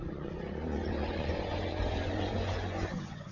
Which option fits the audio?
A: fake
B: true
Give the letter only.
A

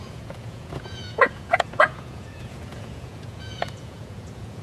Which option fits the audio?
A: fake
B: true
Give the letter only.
A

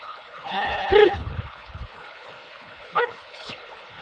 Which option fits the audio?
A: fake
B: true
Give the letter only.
A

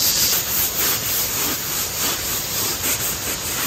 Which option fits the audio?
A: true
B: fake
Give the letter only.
B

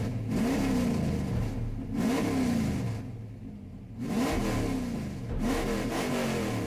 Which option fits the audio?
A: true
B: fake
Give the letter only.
A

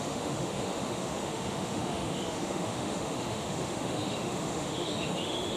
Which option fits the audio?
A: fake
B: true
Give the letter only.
A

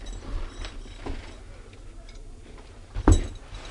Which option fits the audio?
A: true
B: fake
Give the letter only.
A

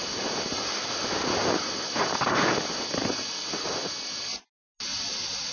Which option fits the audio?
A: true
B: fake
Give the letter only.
A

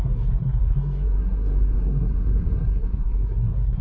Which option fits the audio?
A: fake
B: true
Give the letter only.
A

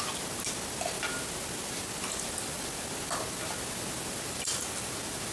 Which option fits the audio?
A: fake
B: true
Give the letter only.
B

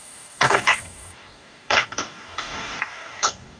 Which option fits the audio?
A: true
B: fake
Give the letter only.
B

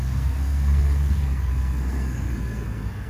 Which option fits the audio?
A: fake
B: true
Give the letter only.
A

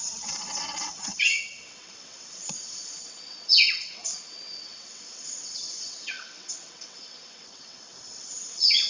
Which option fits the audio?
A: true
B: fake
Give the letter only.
B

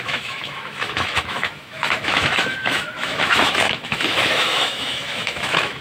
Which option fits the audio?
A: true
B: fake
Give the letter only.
B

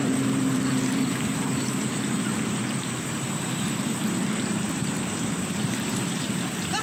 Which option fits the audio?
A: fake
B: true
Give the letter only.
A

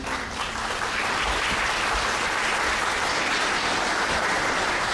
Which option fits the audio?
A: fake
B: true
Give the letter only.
B